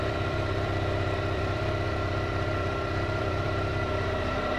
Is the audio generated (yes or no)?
yes